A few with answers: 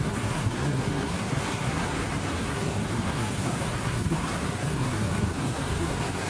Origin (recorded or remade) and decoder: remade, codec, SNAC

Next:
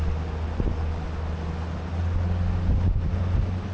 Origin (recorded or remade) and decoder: recorded